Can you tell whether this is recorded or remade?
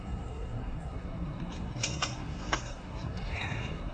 remade